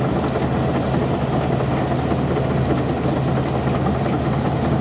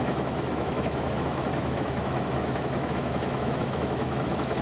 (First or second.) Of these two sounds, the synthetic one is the second